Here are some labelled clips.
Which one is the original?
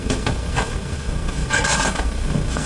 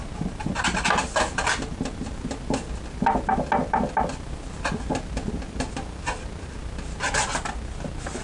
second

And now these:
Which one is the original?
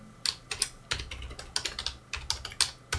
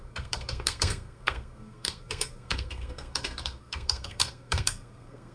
first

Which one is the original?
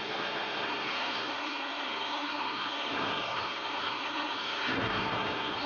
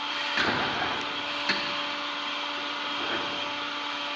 second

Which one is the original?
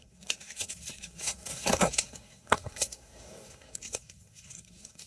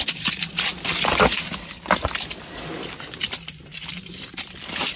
second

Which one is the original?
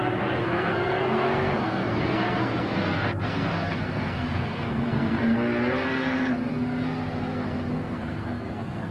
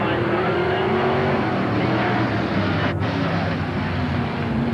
second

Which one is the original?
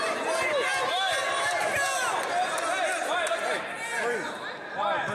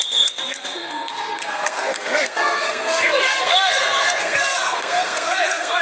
first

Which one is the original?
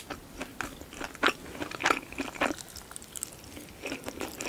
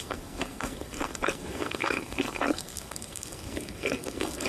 first